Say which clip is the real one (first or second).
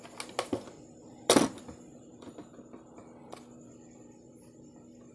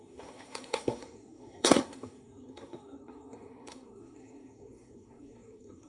first